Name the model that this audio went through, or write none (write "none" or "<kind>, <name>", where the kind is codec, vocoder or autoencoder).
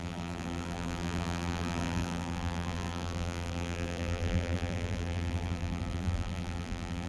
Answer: vocoder, BigVGAN v2